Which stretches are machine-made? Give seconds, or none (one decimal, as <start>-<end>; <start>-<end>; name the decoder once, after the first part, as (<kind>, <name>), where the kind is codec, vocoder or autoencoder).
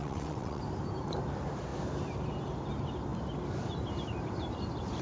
0.0-0.6 (vocoder, WaveNeXt)